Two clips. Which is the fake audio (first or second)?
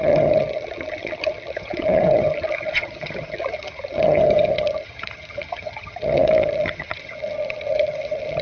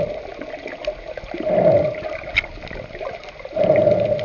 first